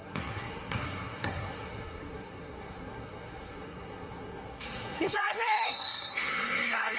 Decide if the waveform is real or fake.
fake